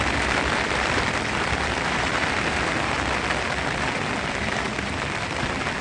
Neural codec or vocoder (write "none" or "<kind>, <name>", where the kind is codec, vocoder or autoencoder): vocoder, BigVGAN v2